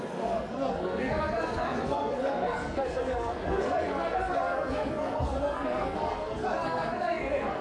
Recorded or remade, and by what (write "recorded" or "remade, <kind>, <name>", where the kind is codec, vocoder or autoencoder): remade, codec, SNAC